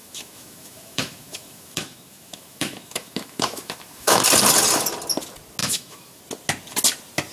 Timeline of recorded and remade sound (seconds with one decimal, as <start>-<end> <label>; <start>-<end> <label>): 0.0-4.2 remade; 4.2-5.6 recorded; 5.6-6.2 remade; 6.2-7.3 recorded